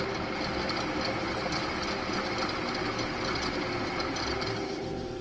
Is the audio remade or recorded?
recorded